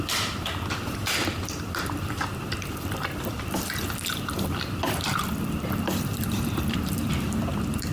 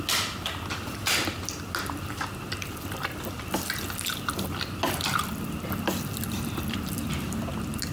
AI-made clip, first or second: first